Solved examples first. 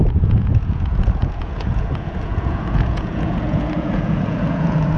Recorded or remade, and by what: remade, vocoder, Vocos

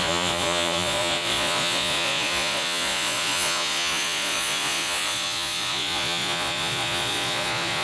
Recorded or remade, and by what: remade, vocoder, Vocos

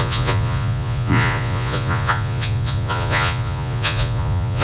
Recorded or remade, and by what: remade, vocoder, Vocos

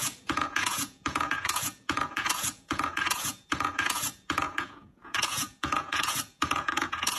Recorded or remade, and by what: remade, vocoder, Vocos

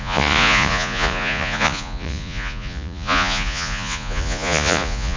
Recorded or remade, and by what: remade, vocoder, Vocos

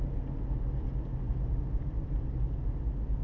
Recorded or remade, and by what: recorded